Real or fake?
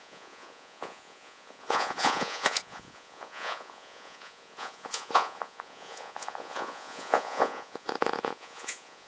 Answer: fake